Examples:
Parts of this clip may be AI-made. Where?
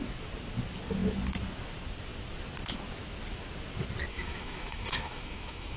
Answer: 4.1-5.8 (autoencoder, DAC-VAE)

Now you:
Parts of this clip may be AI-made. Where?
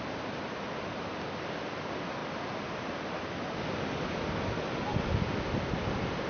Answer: none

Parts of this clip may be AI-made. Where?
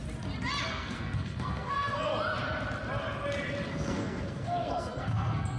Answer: 0.7-2.1 (codec, SNAC); 3.7-5.6